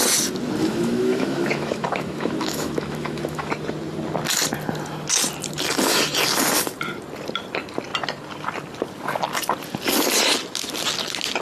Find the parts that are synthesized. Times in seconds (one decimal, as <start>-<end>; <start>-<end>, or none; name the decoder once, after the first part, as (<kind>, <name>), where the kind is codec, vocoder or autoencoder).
0.6-3.5 (autoencoder, DAC-VAE)

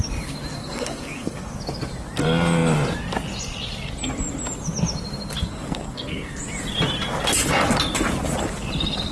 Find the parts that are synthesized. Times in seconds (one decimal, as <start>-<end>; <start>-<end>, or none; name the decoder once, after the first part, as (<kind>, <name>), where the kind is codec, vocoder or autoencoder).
0.6-1.5 (codec, SNAC); 5.5-6.4